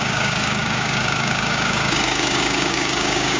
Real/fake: fake